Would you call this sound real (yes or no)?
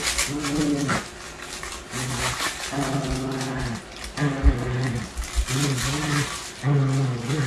yes